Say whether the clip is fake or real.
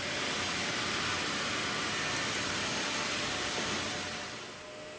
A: real